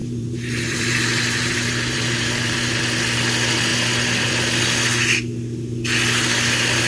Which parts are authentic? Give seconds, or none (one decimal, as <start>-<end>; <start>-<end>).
2.8-6.9